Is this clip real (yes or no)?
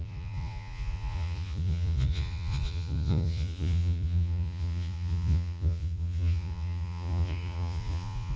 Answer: no